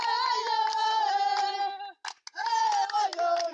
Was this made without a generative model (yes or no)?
yes